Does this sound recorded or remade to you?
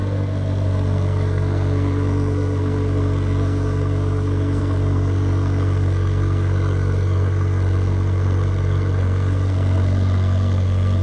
remade